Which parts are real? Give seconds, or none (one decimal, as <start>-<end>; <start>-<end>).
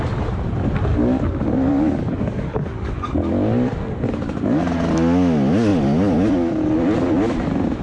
0.0-0.9; 3.1-7.8